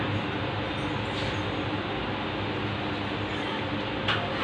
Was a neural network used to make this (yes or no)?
no